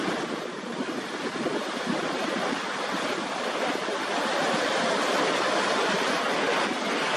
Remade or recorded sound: recorded